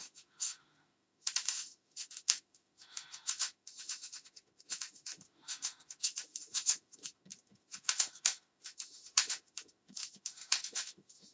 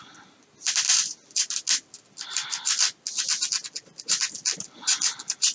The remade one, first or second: first